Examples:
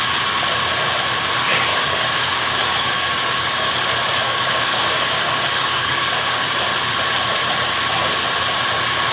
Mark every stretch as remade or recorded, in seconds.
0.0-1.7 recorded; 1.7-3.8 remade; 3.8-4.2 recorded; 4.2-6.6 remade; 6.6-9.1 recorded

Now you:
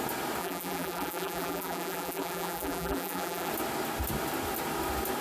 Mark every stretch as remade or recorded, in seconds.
0.0-0.4 recorded; 0.4-3.5 remade; 3.5-5.2 recorded

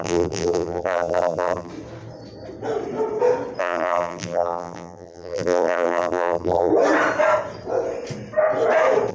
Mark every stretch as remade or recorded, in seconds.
0.0-1.7 remade; 1.7-3.6 recorded; 3.6-6.7 remade; 6.7-9.1 recorded

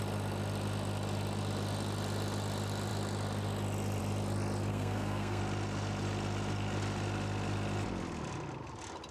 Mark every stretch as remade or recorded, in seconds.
0.0-4.7 recorded; 4.7-5.4 remade; 5.4-9.1 recorded

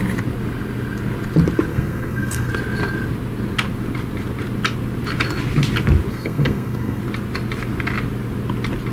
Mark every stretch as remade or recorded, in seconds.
0.0-1.7 recorded; 1.7-2.5 remade; 2.5-6.1 recorded; 6.1-7.0 remade; 7.0-8.9 recorded

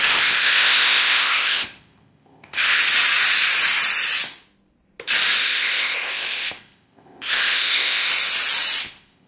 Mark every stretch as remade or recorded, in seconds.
0.0-2.8 remade; 2.8-5.4 recorded; 5.4-8.1 remade; 8.1-8.8 recorded; 8.8-9.3 remade

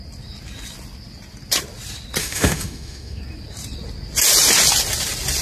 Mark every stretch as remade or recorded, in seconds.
0.0-2.2 recorded; 2.2-3.2 remade; 3.2-5.4 recorded

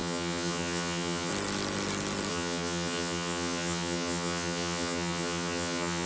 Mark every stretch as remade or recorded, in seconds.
0.0-1.3 remade; 1.3-2.3 recorded; 2.3-6.1 remade